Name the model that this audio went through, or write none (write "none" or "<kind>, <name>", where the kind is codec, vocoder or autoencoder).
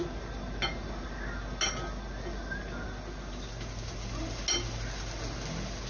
none